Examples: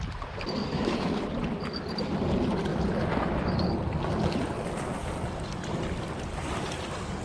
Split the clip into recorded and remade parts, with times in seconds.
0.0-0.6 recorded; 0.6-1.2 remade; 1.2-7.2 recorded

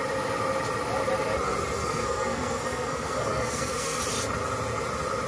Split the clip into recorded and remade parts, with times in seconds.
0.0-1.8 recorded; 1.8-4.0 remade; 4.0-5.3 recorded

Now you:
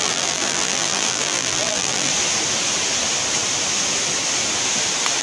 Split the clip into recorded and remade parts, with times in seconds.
0.0-2.1 remade; 2.1-5.2 recorded